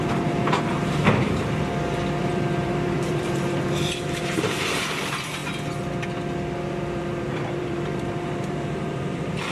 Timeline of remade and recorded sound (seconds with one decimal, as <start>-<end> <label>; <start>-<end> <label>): 0.0-1.7 remade; 1.7-2.2 recorded; 2.2-5.4 remade; 5.4-6.7 recorded; 6.7-9.5 remade